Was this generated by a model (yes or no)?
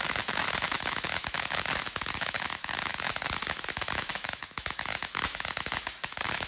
yes